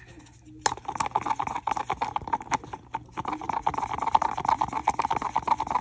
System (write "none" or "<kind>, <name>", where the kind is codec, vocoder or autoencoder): none